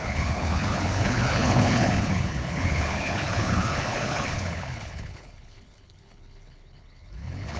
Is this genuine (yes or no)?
no